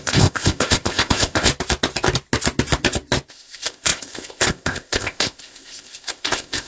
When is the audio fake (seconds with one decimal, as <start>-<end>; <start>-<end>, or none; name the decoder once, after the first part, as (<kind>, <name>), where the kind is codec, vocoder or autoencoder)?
0.0-1.5 (codec, ZipCodec); 3.3-6.7